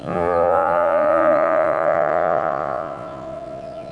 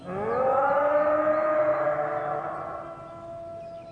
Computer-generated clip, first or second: first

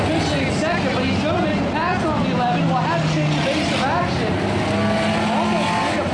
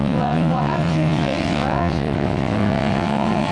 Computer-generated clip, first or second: second